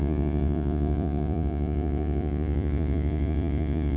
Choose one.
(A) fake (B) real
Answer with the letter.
A